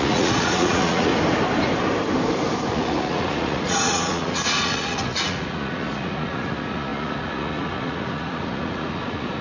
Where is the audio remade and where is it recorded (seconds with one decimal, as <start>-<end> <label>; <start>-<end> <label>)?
0.0-1.1 remade; 1.1-2.7 recorded; 2.7-9.4 remade